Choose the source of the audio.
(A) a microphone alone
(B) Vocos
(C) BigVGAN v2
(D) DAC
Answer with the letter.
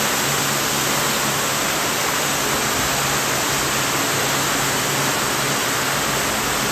A